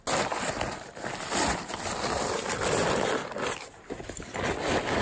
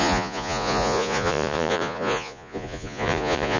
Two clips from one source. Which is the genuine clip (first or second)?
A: first